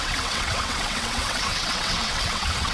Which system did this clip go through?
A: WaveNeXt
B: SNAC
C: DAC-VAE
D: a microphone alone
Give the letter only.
A